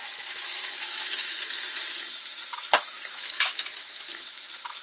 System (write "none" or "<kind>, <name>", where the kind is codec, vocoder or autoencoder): autoencoder, DAC-VAE